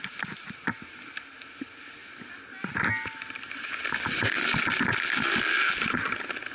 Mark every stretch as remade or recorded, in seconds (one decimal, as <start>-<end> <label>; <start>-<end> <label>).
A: 0.0-6.5 recorded